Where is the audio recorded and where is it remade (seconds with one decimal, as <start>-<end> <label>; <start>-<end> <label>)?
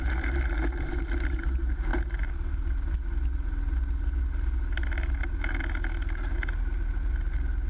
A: 0.0-1.9 recorded; 1.9-2.5 remade; 2.5-7.7 recorded